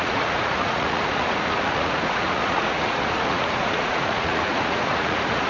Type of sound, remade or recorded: remade